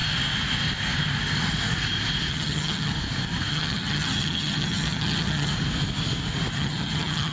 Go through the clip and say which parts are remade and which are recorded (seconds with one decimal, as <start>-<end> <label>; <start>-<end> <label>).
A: 0.0-2.3 recorded; 2.3-2.9 remade; 2.9-3.5 recorded; 3.5-5.5 remade; 5.5-6.5 recorded; 6.5-7.3 remade